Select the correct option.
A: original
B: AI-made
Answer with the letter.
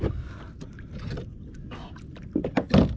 A